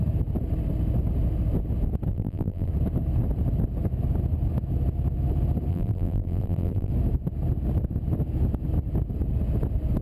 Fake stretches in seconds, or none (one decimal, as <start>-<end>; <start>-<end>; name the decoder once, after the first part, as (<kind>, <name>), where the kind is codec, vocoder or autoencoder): 2.1-2.7 (vocoder, BigVGAN v2); 5.7-6.9